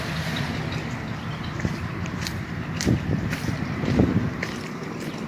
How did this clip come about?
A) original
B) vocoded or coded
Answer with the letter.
B